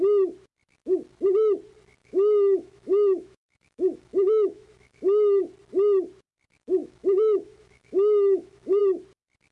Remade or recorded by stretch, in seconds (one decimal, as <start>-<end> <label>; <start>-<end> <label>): 0.0-2.0 recorded; 2.0-5.4 remade; 5.4-6.8 recorded; 6.8-8.8 remade; 8.8-9.5 recorded